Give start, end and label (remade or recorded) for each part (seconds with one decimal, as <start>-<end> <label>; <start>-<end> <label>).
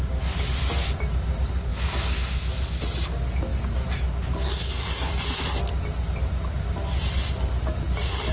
0.0-8.3 recorded